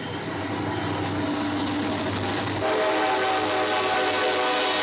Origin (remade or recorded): recorded